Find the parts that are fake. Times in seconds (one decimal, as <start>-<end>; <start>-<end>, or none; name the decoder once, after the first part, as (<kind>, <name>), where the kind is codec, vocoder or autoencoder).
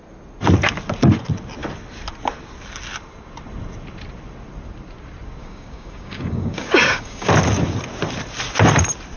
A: 5.4-7.3 (codec, DAC)